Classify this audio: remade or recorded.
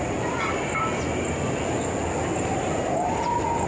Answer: recorded